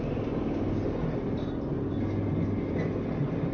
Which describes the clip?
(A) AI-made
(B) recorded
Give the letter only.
B